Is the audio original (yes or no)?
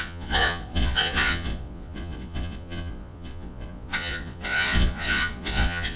no